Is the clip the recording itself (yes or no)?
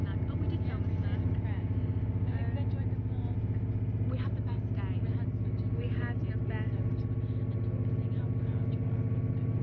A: yes